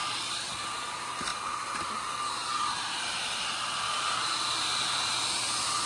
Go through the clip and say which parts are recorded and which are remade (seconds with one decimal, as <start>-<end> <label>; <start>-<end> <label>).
0.0-0.7 remade; 0.7-2.4 recorded; 2.4-5.2 remade; 5.2-5.9 recorded